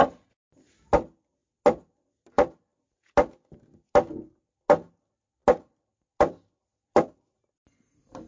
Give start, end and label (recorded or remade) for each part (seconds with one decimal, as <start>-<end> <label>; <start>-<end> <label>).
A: 0.0-8.3 recorded